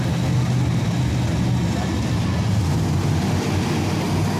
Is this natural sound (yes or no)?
yes